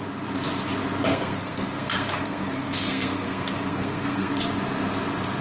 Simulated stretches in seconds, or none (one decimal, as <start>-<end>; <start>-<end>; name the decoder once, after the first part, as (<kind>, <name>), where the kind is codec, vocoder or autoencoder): 1.1-4.3 (codec, SNAC)